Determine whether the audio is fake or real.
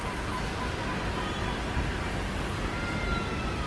real